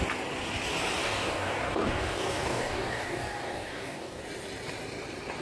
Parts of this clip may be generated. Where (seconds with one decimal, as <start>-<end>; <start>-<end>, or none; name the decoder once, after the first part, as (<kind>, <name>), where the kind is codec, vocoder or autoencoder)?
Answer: 1.0-4.2 (codec, DAC)